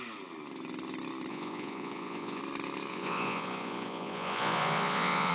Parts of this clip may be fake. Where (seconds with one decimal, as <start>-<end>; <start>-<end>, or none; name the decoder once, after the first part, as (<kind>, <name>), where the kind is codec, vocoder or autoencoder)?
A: 1.3-2.4 (vocoder, Vocos); 2.9-5.3